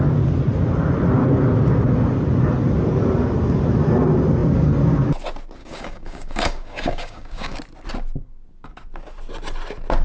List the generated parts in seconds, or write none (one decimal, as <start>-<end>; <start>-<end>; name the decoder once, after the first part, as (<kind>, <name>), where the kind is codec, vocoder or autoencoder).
5.6-7.6 (codec, DAC)